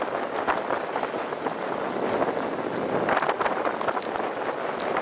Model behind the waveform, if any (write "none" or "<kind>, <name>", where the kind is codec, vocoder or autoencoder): none